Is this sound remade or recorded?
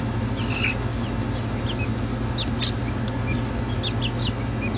recorded